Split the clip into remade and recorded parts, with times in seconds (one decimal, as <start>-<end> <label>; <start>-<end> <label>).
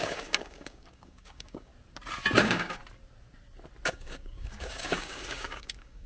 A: 0.0-1.7 remade; 1.7-2.4 recorded; 2.4-2.8 remade; 2.8-3.9 recorded; 3.9-6.1 remade